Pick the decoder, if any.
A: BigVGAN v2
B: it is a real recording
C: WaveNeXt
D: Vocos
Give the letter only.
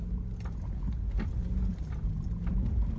B